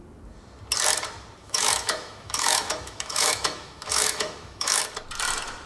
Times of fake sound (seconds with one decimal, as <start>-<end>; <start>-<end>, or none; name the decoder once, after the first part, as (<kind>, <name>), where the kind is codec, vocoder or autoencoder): 1.4-4.8 (autoencoder, DAC-VAE)